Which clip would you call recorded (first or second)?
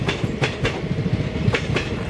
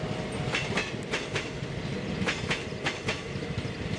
second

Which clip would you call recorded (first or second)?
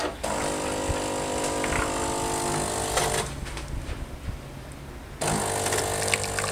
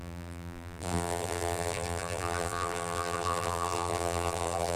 first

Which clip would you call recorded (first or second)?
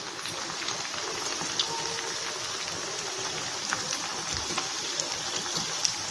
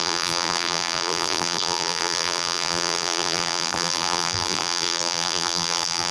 first